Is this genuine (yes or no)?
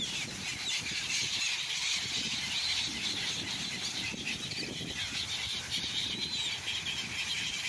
yes